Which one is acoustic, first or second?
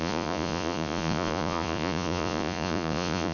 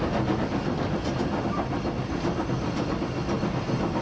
second